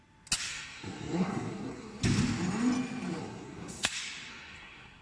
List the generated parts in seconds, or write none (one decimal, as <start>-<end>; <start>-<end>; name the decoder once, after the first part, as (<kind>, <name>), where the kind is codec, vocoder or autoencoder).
0.5-2.0 (codec, SNAC); 3.2-3.9; 4.3-5.0

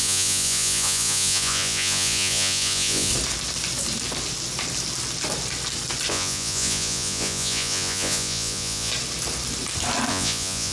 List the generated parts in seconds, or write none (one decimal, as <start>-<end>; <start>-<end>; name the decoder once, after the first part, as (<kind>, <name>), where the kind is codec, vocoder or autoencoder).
0.0-3.1 (vocoder, Vocos); 6.1-8.9; 10.1-10.7

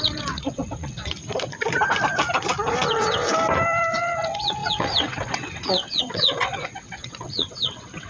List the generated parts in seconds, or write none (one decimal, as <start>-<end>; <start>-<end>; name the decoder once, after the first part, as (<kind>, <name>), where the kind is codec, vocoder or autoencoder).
0.0-1.2 (vocoder, WaveNeXt); 2.9-3.3; 3.9-8.1